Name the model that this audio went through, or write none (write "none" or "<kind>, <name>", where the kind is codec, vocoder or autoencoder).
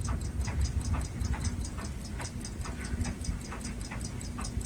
none